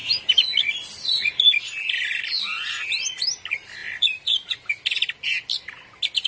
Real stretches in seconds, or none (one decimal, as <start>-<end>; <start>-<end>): 0.0-6.3